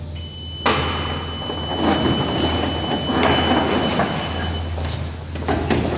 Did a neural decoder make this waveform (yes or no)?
no